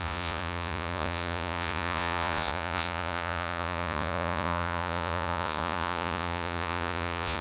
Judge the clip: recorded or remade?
remade